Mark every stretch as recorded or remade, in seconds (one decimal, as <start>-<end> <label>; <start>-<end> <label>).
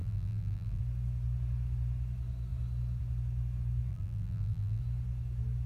0.0-0.8 remade; 0.8-3.9 recorded; 3.9-4.8 remade; 4.8-5.7 recorded